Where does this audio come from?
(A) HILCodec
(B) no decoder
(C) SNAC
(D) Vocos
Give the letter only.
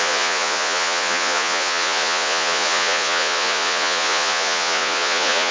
D